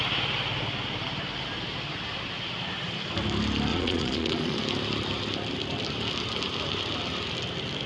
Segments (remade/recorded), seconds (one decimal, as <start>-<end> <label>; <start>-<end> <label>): 0.0-3.7 recorded; 3.7-4.6 remade; 4.6-7.9 recorded